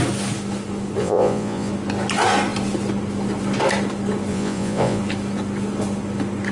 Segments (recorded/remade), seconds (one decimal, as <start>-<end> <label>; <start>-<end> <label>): 0.0-1.0 recorded; 1.0-1.7 remade; 1.7-4.3 recorded; 4.3-5.0 remade; 5.0-6.5 recorded